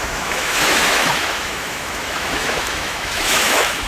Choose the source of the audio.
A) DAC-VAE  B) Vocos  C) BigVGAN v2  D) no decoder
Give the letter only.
A